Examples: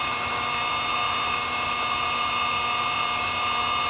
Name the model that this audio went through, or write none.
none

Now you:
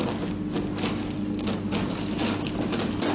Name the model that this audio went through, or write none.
none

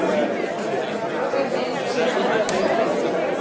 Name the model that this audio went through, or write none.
none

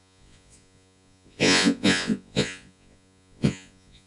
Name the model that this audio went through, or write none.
vocoder, Vocos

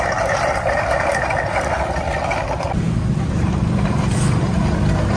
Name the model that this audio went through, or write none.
none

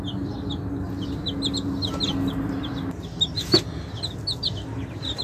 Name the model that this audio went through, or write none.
none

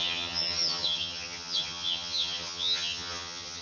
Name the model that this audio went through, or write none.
vocoder, HiFi-GAN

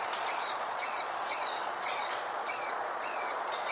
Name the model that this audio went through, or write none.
vocoder, Vocos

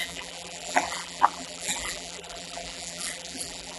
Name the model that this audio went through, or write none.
vocoder, BigVGAN v2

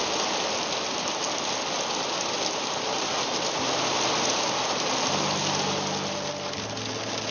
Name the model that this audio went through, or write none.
none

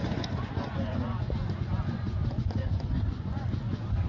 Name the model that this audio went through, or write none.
vocoder, Vocos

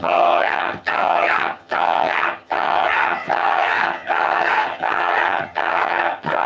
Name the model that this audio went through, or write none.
vocoder, HiFi-GAN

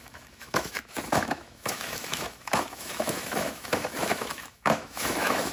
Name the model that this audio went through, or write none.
autoencoder, DAC-VAE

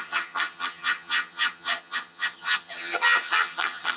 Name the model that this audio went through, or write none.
vocoder, HiFi-GAN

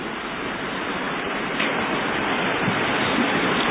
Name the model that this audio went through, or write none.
none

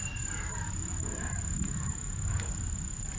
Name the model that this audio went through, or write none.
none